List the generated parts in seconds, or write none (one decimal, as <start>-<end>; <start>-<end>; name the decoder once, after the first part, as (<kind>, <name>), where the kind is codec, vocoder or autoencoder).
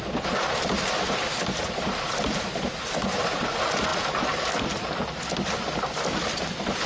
3.0-3.5 (vocoder, BigVGAN v2)